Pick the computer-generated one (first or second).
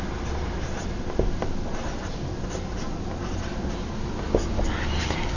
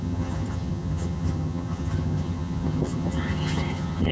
second